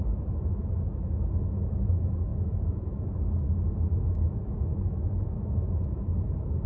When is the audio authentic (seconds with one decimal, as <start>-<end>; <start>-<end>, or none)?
none